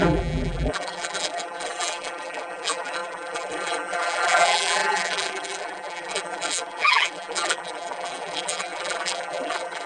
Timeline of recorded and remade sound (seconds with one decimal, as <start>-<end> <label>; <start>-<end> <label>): 0.0-9.9 remade